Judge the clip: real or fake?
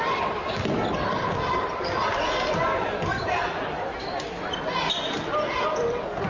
real